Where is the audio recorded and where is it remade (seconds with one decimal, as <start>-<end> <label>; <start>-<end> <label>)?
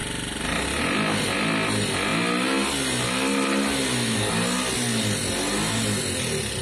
0.0-6.6 recorded